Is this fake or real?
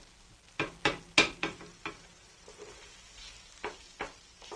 real